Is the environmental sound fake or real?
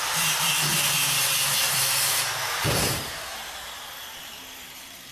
fake